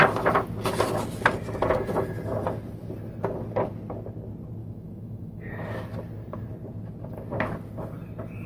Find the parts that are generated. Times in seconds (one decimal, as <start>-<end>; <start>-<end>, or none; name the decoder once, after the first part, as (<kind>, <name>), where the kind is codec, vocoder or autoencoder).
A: 4.6-5.5 (autoencoder, DAC-VAE)